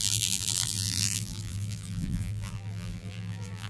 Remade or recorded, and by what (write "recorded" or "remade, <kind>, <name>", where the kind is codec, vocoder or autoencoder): remade, vocoder, BigVGAN v2